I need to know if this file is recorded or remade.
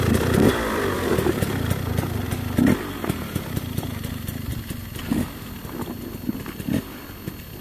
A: recorded